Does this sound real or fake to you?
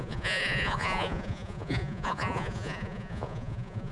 fake